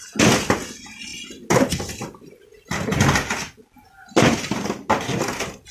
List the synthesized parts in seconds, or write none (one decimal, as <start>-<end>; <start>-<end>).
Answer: none